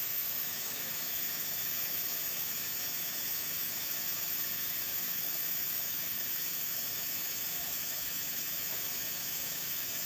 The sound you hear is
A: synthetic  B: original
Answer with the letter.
A